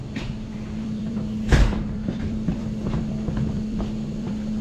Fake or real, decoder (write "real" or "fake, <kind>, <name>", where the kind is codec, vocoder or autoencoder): fake, vocoder, BigVGAN v2